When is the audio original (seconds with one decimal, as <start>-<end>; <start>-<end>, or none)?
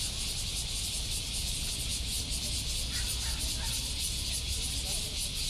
0.0-5.5